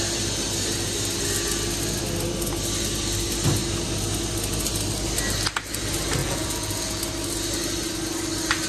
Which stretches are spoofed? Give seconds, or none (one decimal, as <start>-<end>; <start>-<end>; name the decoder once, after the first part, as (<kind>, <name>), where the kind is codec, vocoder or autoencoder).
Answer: 6.2-7.0 (vocoder, Vocos)